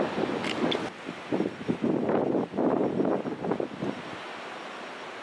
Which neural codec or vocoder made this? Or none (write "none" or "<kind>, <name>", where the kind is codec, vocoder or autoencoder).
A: none